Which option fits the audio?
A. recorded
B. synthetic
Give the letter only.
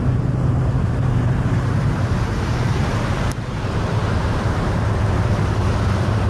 B